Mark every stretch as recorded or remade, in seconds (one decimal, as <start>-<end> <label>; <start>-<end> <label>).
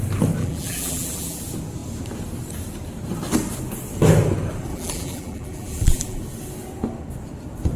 0.0-0.4 recorded; 0.4-1.4 remade; 1.4-4.7 recorded; 4.7-6.2 remade; 6.2-7.8 recorded